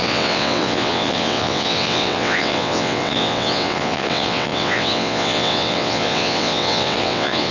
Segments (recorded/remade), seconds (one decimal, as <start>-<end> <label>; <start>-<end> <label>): 0.0-7.5 remade